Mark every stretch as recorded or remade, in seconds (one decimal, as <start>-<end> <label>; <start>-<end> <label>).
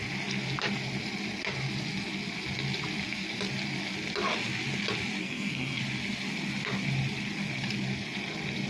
0.0-5.2 recorded; 5.2-5.8 remade; 5.8-8.7 recorded